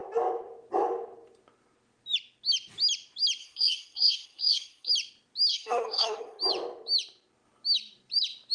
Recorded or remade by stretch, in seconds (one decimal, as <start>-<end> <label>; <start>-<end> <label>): 0.0-3.4 recorded; 3.4-4.9 remade; 4.9-5.5 recorded; 5.5-6.4 remade; 6.4-8.5 recorded